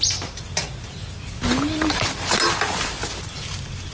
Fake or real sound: real